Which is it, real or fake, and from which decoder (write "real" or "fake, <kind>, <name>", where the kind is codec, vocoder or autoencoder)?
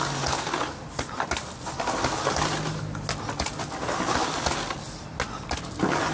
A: real